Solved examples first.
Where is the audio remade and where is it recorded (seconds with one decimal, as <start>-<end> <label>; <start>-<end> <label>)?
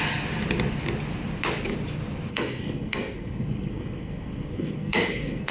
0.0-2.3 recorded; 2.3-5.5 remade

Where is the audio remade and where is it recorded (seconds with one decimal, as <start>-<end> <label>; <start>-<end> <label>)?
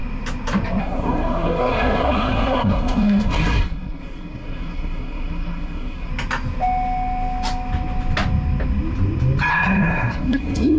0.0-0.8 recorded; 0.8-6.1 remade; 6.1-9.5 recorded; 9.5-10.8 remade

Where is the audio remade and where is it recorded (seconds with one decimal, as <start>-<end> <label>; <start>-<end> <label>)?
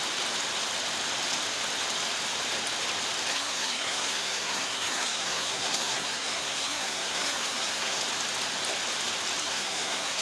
0.0-3.3 recorded; 3.3-8.0 remade; 8.0-9.4 recorded; 9.4-10.2 remade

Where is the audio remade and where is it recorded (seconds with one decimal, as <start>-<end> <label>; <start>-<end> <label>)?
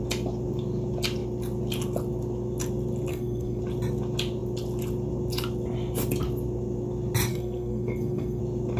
0.0-3.1 recorded; 3.1-3.6 remade; 3.6-7.3 recorded; 7.3-8.4 remade; 8.4-8.8 recorded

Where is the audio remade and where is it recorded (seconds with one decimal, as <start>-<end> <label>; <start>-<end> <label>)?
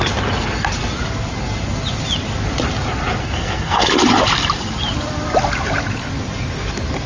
0.0-3.2 recorded; 3.2-3.9 remade; 3.9-7.1 recorded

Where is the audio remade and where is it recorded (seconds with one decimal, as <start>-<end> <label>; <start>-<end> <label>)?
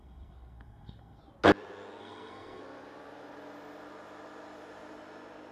0.0-1.2 remade; 1.2-2.0 recorded; 2.0-2.6 remade; 2.6-5.5 recorded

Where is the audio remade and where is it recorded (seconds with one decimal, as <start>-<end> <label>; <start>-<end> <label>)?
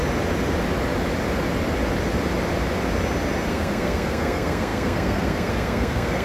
0.0-3.5 recorded; 3.5-6.2 remade